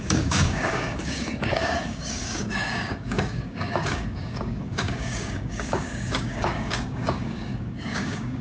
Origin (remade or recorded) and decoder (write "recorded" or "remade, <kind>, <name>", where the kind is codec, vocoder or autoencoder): remade, codec, DAC